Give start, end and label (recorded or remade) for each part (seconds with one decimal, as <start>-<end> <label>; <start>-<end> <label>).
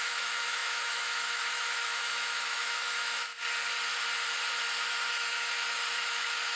0.0-3.3 remade; 3.3-5.1 recorded; 5.1-6.5 remade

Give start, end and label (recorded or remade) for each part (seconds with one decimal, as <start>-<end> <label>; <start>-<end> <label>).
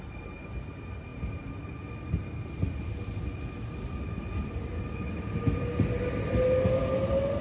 0.0-7.4 recorded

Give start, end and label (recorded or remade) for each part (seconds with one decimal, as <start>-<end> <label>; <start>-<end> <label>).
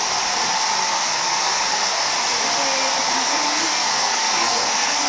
0.0-0.8 recorded; 0.8-2.1 remade; 2.1-3.2 recorded; 3.2-5.1 remade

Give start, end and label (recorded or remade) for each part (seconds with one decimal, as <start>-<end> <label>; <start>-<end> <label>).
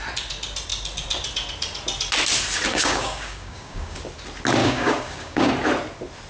0.0-2.7 recorded; 2.7-4.0 remade; 4.0-4.6 recorded; 4.6-5.5 remade; 5.5-6.3 recorded